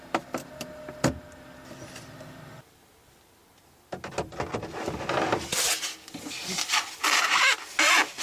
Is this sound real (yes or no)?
yes